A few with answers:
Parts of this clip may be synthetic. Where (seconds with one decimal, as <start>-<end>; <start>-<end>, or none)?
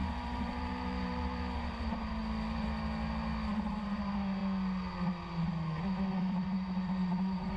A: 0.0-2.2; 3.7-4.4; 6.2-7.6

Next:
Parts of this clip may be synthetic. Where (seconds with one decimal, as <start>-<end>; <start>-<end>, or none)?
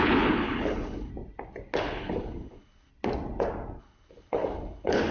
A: 0.0-1.1; 1.8-2.9; 3.8-5.1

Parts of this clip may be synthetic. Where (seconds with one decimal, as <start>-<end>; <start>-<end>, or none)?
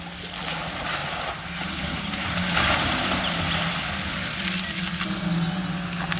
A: 1.0-3.8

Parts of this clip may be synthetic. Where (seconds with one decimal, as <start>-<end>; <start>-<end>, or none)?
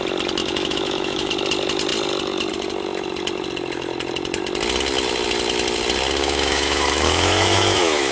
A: 0.4-1.3; 6.2-8.1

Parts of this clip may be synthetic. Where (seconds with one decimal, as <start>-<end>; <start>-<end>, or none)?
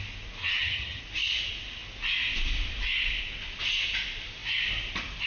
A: 0.4-1.0